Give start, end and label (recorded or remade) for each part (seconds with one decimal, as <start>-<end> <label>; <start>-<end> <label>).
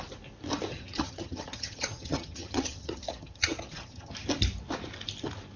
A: 0.0-0.7 recorded; 0.7-4.1 remade; 4.1-5.6 recorded